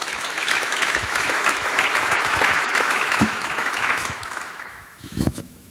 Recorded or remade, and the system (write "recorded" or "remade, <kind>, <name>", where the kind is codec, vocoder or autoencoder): remade, autoencoder, DAC-VAE